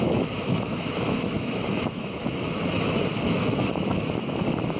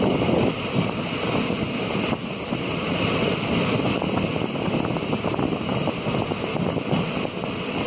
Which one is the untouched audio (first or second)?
second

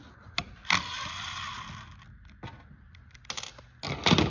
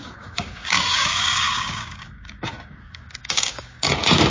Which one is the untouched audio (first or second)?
first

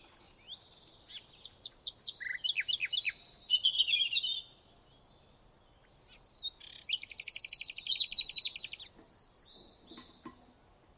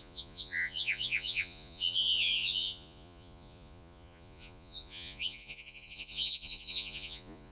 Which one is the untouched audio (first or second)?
first